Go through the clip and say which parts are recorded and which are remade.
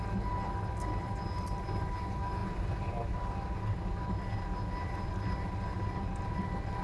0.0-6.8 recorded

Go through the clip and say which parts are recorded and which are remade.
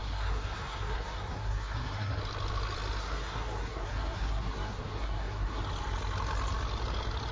0.0-2.2 remade; 2.2-3.0 recorded; 3.0-5.6 remade; 5.6-7.3 recorded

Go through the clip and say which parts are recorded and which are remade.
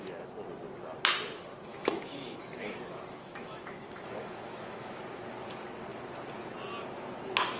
0.0-1.7 recorded; 1.7-5.2 remade; 5.2-7.6 recorded